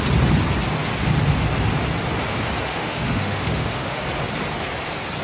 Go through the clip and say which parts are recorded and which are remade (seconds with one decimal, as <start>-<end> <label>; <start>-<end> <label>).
0.0-2.7 recorded; 2.7-4.0 remade; 4.0-5.2 recorded